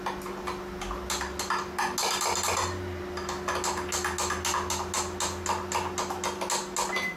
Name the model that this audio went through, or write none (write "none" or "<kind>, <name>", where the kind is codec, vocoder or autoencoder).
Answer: none